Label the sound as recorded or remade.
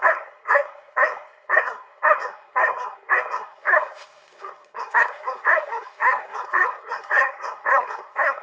remade